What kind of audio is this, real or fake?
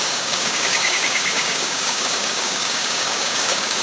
fake